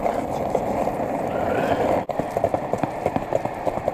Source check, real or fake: fake